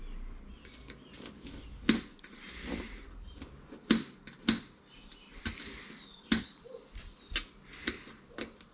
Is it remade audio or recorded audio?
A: recorded